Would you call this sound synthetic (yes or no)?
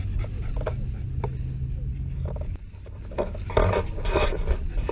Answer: no